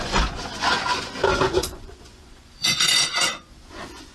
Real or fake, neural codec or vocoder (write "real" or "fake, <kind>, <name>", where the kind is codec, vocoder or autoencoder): fake, vocoder, Vocos